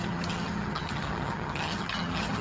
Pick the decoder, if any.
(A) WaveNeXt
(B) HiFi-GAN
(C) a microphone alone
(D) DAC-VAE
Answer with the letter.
B